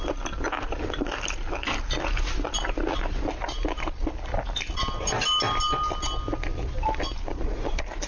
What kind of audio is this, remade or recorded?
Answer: recorded